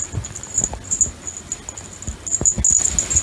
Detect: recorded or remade recorded